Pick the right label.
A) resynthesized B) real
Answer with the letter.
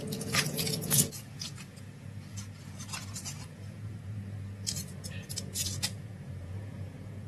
A